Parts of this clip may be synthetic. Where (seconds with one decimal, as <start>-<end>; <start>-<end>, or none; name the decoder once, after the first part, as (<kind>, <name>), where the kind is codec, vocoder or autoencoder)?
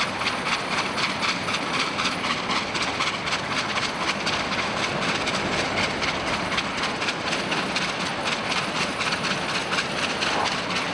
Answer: none